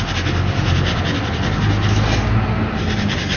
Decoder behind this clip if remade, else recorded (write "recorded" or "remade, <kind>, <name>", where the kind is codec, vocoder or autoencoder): recorded